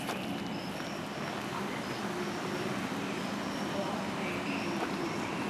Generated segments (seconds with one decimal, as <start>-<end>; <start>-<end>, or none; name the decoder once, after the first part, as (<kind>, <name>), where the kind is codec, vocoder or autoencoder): none